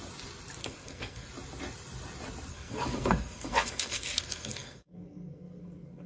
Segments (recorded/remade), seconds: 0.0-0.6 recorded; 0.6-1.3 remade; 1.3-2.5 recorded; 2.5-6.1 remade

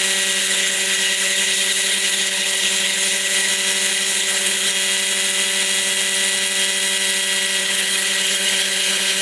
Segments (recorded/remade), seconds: 0.0-0.4 recorded; 0.4-3.5 remade; 3.5-3.9 recorded; 3.9-4.7 remade; 4.7-7.6 recorded; 7.6-9.2 remade

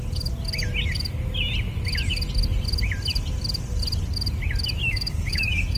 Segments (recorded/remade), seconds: 0.0-4.8 recorded; 4.8-5.8 remade

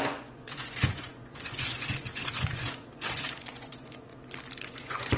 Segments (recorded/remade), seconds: 0.0-4.1 remade; 4.1-4.6 recorded; 4.6-5.2 remade